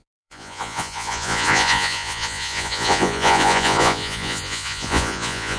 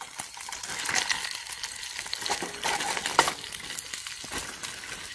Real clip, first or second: second